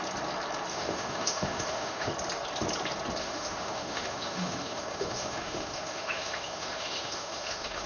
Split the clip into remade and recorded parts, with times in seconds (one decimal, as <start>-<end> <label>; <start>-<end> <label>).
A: 0.0-0.7 recorded; 0.7-2.1 remade; 2.1-3.2 recorded; 3.2-7.9 remade

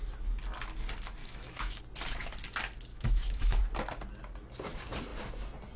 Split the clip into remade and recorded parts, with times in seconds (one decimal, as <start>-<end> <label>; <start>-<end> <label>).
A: 0.0-1.2 recorded; 1.2-1.8 remade; 1.8-2.9 recorded; 2.9-3.6 remade; 3.6-5.8 recorded

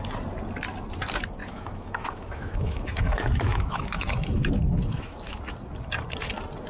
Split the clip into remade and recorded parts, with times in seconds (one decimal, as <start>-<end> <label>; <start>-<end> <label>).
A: 0.0-1.4 recorded; 1.4-5.4 remade; 5.4-6.7 recorded

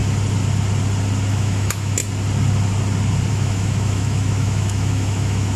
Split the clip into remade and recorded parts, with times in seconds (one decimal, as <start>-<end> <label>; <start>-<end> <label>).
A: 0.0-1.3 recorded; 1.3-2.0 remade; 2.0-3.3 recorded; 3.3-5.6 remade

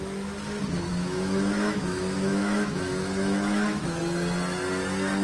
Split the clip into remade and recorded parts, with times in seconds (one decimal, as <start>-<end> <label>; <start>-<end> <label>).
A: 0.0-0.9 recorded; 0.9-4.0 remade; 4.0-5.2 recorded